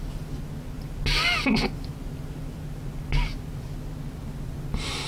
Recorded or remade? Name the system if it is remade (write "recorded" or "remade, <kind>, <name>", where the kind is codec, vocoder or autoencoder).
recorded